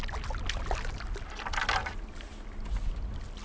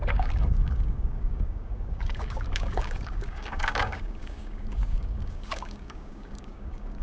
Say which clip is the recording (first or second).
first